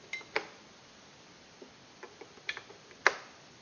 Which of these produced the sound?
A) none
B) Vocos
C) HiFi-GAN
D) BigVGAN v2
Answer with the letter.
A